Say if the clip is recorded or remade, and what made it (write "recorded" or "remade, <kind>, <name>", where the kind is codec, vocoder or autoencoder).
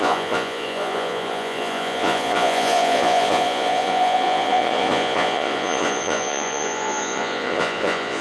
remade, vocoder, Vocos